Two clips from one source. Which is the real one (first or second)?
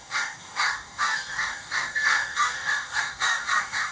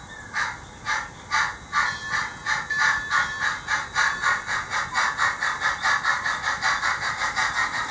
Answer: second